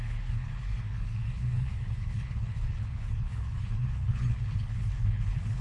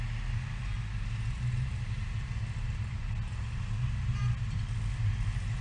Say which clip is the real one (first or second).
second